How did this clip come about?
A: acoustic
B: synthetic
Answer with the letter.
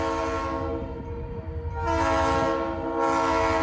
A